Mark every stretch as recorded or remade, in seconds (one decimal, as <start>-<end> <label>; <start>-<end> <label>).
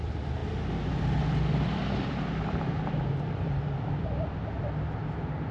0.0-0.4 remade; 0.4-0.9 recorded; 0.9-4.4 remade; 4.4-5.5 recorded